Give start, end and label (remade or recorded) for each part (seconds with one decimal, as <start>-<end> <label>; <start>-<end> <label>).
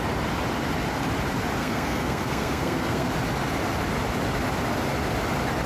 0.0-1.6 recorded; 1.6-3.1 remade; 3.1-5.7 recorded